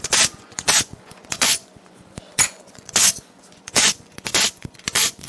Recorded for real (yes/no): no